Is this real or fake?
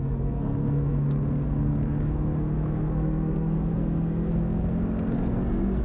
fake